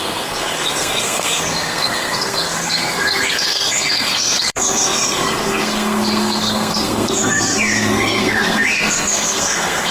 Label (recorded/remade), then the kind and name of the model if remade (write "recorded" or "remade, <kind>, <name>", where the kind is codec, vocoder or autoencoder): remade, codec, SNAC